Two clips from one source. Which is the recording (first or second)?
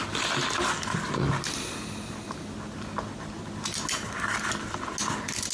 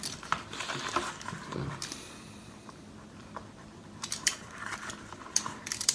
first